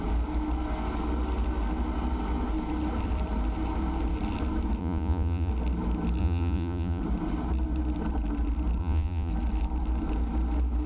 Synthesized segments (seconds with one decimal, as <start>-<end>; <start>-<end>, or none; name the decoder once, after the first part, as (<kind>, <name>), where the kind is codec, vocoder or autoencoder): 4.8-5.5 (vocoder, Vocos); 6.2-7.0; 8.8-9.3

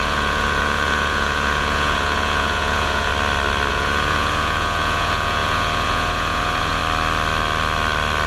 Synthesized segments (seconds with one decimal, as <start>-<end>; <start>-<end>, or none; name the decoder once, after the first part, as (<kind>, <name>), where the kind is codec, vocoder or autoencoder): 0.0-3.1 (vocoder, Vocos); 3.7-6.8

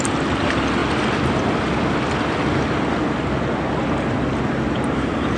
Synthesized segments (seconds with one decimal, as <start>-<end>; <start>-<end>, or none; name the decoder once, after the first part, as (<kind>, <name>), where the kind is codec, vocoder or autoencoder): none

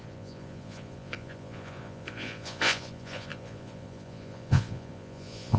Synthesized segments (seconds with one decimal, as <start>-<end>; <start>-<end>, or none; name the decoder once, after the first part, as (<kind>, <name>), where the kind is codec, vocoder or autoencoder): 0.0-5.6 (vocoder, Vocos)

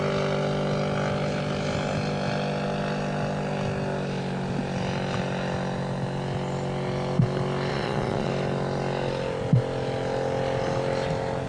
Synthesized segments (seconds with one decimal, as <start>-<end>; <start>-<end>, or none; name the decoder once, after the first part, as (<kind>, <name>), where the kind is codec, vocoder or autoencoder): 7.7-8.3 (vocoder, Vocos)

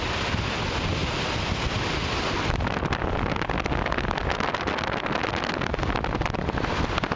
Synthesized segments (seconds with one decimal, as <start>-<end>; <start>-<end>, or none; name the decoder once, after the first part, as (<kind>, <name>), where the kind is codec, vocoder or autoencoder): none

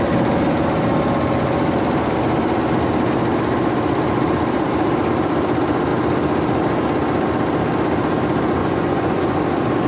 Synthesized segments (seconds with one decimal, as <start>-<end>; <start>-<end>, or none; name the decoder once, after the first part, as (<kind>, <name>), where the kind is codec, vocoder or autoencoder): 8.6-9.4 (vocoder, Vocos)